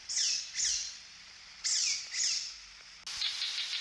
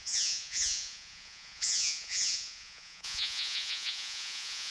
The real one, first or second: first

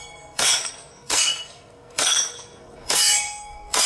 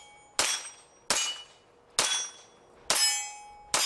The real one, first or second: second